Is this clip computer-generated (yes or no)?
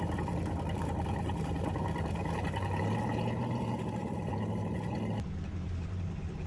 yes